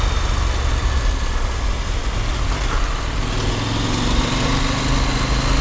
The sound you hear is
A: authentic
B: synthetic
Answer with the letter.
A